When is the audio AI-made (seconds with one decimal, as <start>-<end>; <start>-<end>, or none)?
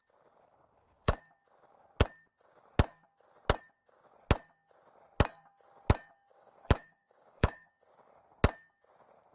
0.5-1.2; 6.3-7.7